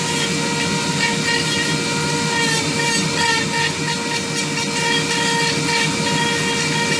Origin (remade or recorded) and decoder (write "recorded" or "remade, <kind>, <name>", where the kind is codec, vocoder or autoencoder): recorded